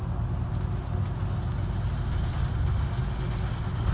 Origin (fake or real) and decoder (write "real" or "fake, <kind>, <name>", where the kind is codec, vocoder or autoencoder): real